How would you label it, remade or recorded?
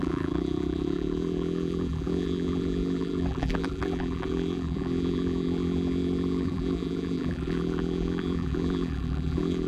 remade